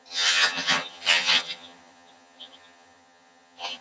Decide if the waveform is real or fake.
fake